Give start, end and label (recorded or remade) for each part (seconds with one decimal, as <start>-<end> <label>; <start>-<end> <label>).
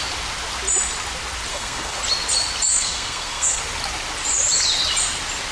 0.0-1.5 recorded; 1.5-2.0 remade; 2.0-2.7 recorded; 2.7-3.6 remade; 3.6-5.5 recorded